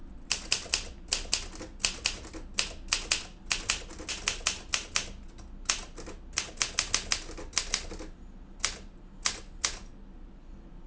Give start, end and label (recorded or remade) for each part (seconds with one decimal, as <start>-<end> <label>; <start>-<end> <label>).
0.0-10.9 recorded